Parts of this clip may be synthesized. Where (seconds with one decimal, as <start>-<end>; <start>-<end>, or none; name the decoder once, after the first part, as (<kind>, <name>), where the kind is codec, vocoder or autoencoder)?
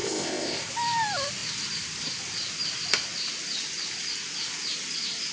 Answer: 0.0-0.7 (codec, ZipCodec)